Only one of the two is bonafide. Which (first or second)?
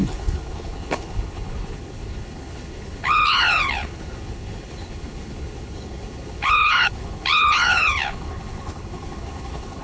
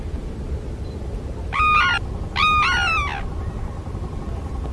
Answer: second